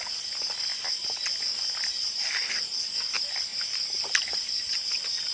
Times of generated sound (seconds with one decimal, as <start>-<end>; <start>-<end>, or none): 3.5-5.3